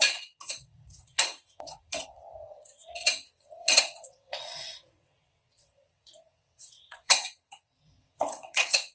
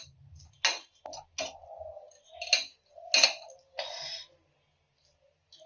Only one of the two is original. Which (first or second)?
second